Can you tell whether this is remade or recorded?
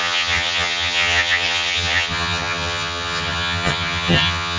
remade